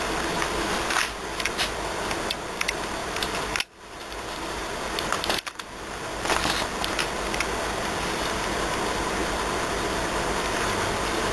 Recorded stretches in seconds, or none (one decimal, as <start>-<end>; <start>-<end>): 0.0-11.3